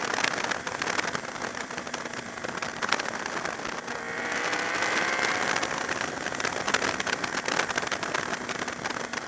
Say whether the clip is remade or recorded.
remade